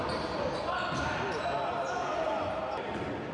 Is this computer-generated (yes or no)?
no